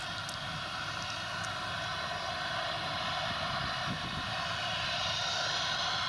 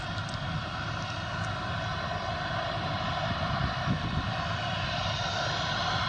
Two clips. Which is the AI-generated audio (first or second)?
second